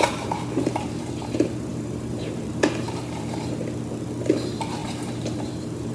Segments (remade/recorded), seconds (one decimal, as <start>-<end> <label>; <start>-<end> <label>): 0.0-3.6 remade; 3.6-4.3 recorded; 4.3-5.9 remade

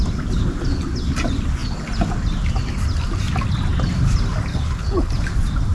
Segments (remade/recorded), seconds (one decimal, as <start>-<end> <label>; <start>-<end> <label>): 0.0-4.5 recorded; 4.5-5.1 remade; 5.1-5.7 recorded